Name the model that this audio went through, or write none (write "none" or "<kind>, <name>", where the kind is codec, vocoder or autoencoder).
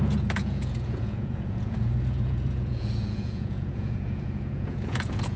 vocoder, Vocos